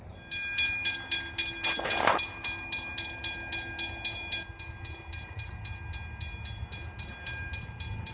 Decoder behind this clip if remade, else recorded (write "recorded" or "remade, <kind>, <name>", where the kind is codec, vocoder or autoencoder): recorded